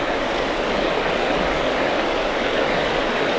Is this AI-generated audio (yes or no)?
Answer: yes